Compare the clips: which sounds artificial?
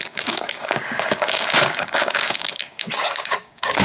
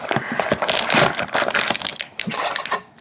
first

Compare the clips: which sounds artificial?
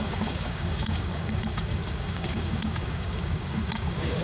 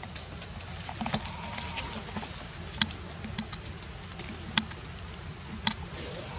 first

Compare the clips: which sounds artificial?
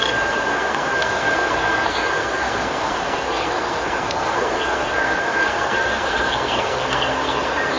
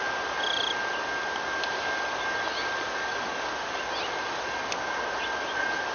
first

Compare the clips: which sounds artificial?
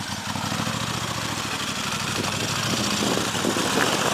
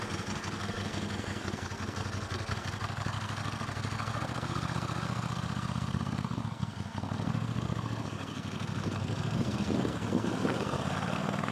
second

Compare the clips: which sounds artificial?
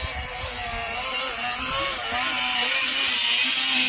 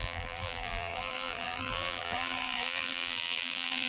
second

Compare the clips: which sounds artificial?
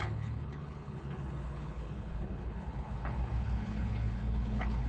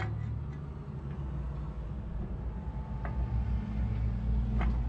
first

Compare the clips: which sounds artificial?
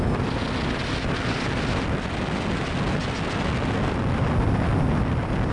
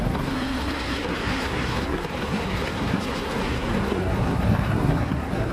second